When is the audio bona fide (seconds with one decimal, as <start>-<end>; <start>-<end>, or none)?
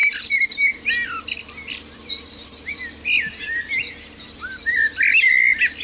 0.7-1.8; 5.3-5.8